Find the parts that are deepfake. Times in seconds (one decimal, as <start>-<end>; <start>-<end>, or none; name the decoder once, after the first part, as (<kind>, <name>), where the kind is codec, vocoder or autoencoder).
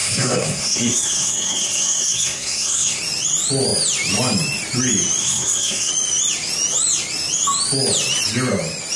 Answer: 0.0-3.0 (codec, SNAC); 5.2-5.9